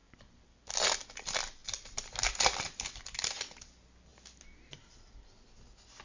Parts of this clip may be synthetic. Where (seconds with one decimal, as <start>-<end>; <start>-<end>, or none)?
none